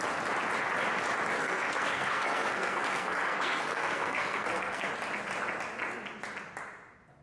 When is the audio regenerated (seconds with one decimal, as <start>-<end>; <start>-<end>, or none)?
1.4-4.9